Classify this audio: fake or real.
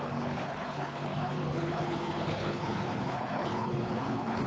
fake